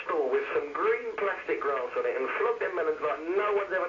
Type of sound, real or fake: real